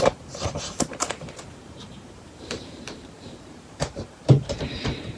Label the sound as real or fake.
fake